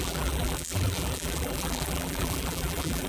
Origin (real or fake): fake